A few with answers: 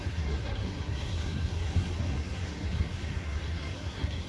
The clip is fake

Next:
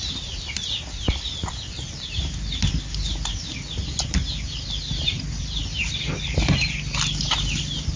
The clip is real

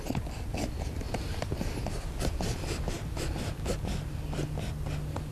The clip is real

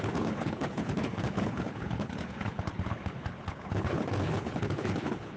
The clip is fake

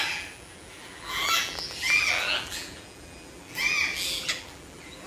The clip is fake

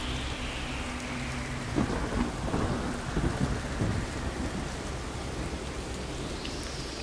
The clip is real